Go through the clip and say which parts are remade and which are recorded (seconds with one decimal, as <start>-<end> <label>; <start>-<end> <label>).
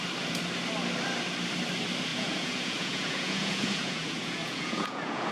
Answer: 0.0-2.1 recorded; 2.1-5.3 remade